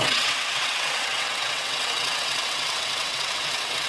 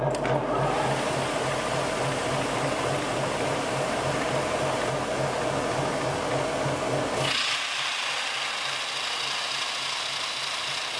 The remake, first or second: first